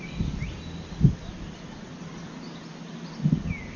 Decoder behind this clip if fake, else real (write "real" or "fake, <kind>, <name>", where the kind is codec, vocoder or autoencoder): real